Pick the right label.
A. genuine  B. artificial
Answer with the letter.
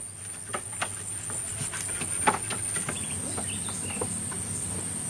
A